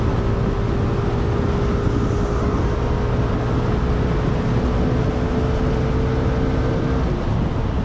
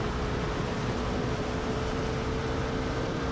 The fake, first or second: second